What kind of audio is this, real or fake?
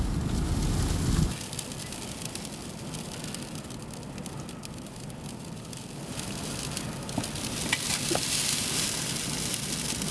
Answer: real